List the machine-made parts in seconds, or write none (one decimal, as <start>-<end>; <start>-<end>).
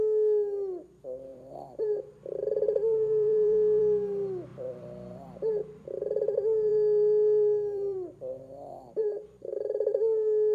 1.3-3.8; 4.5-6.0; 6.7-9.5